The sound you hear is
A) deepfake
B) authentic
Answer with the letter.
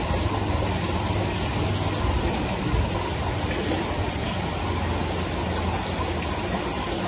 B